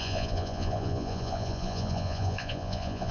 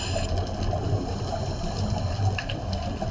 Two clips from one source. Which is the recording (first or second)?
second